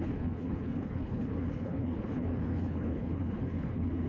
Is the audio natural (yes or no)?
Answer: no